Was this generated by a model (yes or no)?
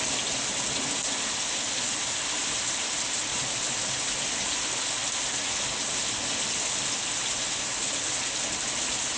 no